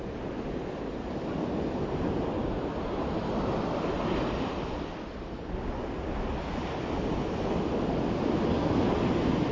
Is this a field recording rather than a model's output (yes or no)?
yes